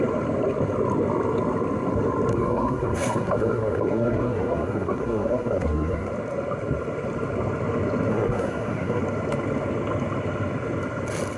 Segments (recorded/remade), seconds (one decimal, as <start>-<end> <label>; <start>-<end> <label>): 0.0-2.3 recorded; 2.3-6.1 remade; 6.1-8.1 recorded; 8.1-9.0 remade; 9.0-11.4 recorded